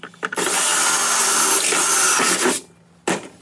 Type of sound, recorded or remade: recorded